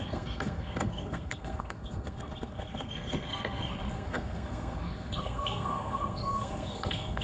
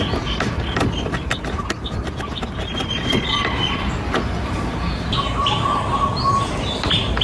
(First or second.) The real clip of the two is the second